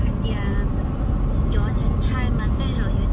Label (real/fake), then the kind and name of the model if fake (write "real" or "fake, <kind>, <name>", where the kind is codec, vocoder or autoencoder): real